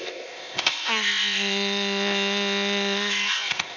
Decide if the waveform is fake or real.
fake